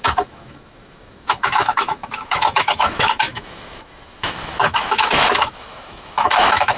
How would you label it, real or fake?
fake